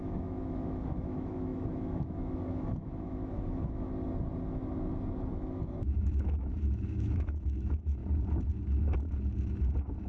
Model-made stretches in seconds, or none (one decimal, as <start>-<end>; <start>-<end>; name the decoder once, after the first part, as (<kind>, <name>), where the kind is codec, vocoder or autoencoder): 0.0-3.9 (autoencoder, DAC-VAE); 5.3-8.0